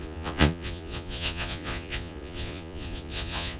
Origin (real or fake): fake